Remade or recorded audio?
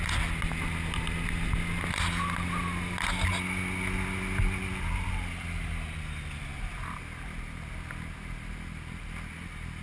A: recorded